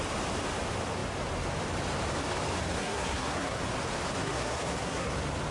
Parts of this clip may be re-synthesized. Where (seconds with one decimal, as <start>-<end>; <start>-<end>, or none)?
2.8-3.6; 4.2-5.1